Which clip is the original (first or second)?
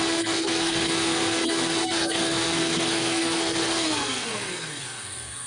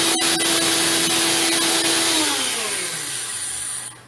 second